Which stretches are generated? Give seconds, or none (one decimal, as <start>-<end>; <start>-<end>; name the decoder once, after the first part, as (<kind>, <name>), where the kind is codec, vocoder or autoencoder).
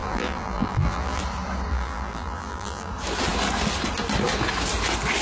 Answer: 0.0-1.2 (vocoder, BigVGAN v2); 1.7-2.9